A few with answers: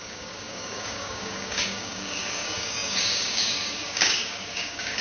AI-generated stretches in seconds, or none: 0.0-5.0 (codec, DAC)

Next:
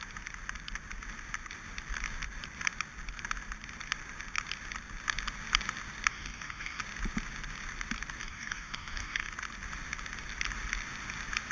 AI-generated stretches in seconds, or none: 6.1-6.8 (codec, DAC); 8.2-9.3

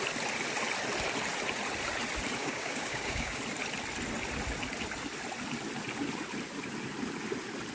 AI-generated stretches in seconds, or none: 2.4-3.4 (codec, DAC)